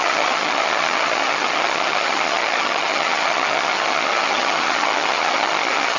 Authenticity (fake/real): fake